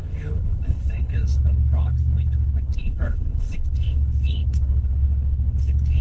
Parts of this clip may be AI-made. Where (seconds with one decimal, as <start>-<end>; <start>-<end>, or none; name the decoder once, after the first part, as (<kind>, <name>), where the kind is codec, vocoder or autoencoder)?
0.0-6.0 (codec, HILCodec)